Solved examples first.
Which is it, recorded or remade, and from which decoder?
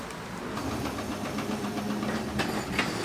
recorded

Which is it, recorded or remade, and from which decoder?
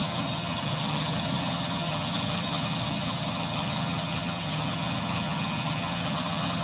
remade, vocoder, HiFi-GAN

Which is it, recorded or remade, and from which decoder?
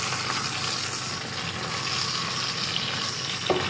recorded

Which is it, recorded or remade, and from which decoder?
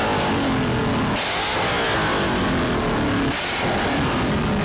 recorded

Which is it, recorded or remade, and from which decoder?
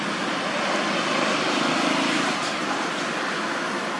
remade, vocoder, BigVGAN v2